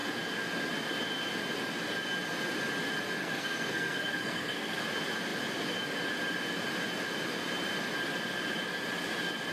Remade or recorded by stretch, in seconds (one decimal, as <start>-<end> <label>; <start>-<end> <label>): 0.0-3.2 recorded; 3.2-4.8 remade; 4.8-9.5 recorded